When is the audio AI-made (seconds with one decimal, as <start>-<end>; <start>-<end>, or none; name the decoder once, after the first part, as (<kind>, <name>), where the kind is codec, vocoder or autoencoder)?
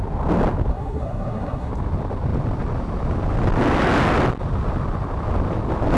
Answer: 0.7-1.7 (codec, SNAC)